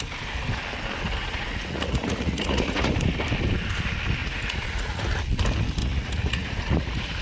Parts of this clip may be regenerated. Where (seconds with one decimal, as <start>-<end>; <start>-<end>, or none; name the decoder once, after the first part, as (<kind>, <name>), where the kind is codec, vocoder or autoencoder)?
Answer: 1.2-2.9 (vocoder, Vocos); 4.2-5.0; 5.8-7.2